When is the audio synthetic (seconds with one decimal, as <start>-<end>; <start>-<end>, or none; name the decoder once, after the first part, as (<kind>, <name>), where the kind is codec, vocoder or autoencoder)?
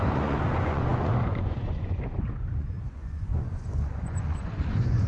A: 0.0-5.1 (vocoder, Vocos)